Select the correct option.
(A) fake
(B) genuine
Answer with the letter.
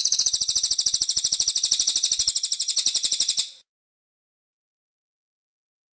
A